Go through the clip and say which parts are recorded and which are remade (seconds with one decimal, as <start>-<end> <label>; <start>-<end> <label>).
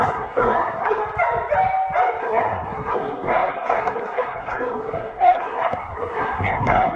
0.0-1.0 remade; 1.0-2.2 recorded; 2.2-7.0 remade